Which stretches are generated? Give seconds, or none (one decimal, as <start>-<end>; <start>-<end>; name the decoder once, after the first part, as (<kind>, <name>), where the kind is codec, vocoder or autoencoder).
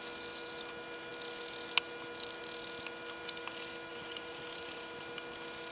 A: 3.9-5.0 (vocoder, BigVGAN v2)